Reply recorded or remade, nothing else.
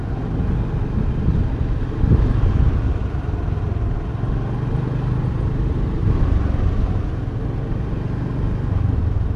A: recorded